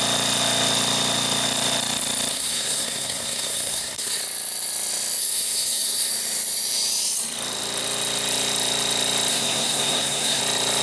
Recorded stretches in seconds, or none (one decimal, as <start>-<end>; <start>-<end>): 0.0-2.3; 4.2-5.2; 6.1-9.3; 10.4-10.8